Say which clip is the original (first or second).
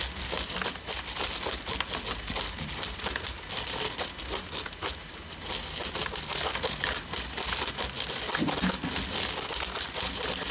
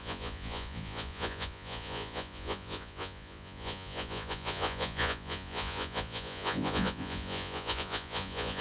first